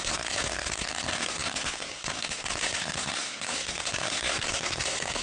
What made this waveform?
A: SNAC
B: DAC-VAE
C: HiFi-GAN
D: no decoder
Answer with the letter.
A